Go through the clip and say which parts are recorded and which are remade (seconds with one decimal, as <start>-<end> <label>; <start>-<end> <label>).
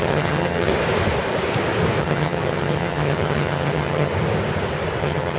0.0-0.7 remade; 0.7-2.0 recorded; 2.0-4.1 remade; 4.1-5.0 recorded; 5.0-5.4 remade